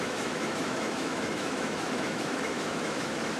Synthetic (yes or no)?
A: yes